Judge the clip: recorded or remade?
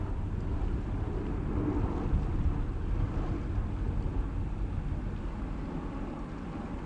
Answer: recorded